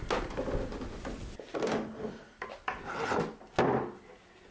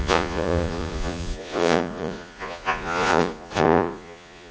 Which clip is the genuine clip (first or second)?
first